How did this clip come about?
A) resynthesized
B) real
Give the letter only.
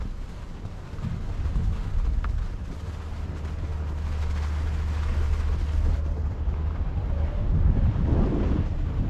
B